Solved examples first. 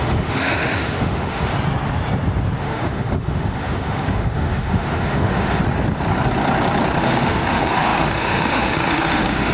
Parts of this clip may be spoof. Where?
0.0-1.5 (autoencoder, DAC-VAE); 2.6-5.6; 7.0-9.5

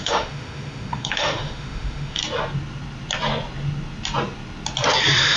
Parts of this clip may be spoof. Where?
0.0-2.2 (autoencoder, DAC-VAE)